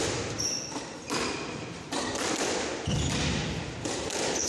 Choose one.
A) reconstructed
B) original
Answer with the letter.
B